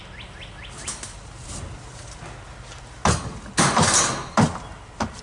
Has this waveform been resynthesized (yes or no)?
no